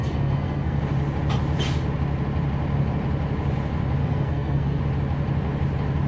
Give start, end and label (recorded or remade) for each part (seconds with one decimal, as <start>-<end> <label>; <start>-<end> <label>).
0.0-0.8 remade; 0.8-4.0 recorded; 4.0-4.8 remade; 4.8-6.1 recorded